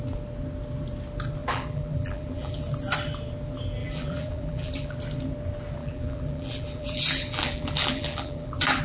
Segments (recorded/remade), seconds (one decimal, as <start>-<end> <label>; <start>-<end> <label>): 0.0-1.4 recorded; 1.4-2.6 remade; 2.6-3.8 recorded; 3.8-5.0 remade; 5.0-5.8 recorded; 5.8-8.8 remade